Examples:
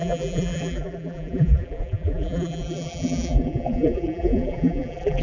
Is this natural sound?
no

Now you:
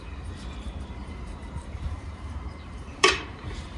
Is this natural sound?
no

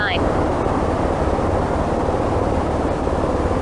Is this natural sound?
yes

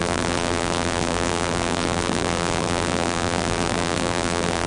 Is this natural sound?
no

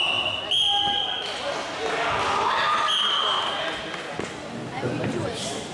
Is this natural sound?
yes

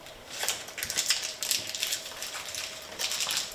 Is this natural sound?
no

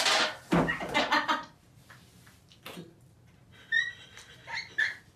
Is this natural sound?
yes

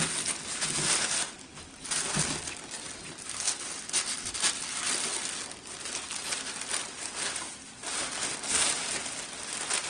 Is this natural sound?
yes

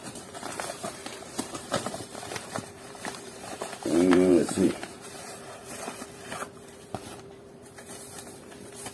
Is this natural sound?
no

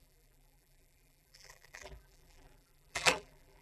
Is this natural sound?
no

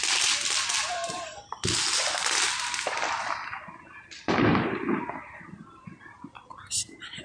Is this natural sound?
no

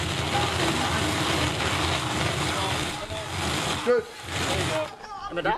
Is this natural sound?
yes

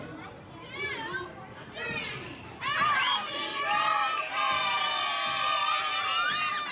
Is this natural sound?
no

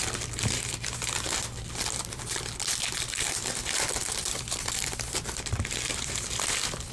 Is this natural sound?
no